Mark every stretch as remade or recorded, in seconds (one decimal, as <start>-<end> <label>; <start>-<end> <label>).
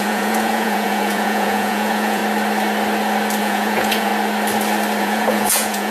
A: 0.0-2.2 remade; 2.2-3.4 recorded; 3.4-4.1 remade; 4.1-5.0 recorded; 5.0-5.9 remade